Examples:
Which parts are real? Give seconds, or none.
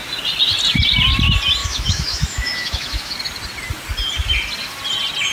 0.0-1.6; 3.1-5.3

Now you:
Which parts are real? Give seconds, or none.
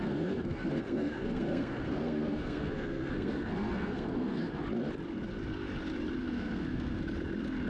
4.6-6.2; 7.0-7.7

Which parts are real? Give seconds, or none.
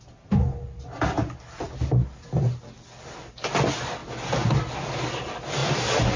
0.0-6.2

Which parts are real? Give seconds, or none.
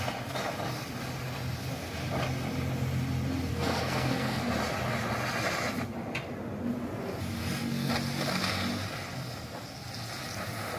0.0-3.5; 4.5-7.4; 7.9-10.8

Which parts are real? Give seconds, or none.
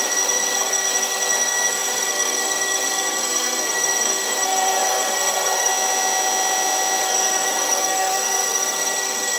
5.7-7.0